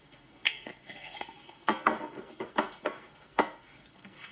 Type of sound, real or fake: fake